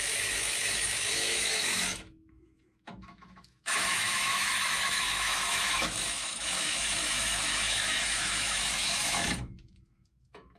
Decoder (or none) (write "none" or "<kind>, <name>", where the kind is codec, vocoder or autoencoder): autoencoder, DAC-VAE